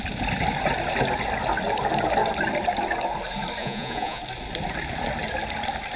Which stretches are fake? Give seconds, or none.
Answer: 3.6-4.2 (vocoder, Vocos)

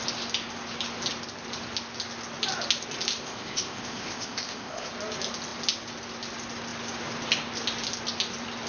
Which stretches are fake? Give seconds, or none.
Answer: 3.2-4.9 (codec, ZipCodec)